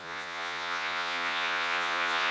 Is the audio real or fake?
fake